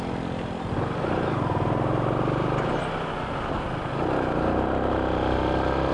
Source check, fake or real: real